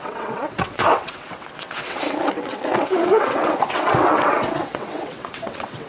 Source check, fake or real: fake